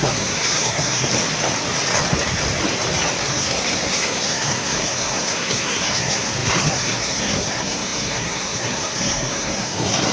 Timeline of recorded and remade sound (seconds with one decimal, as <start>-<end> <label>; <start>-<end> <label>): 0.0-1.1 remade; 1.1-3.3 recorded; 3.3-10.1 remade